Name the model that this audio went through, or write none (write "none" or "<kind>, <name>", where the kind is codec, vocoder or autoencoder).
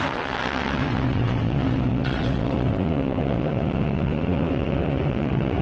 vocoder, WaveNeXt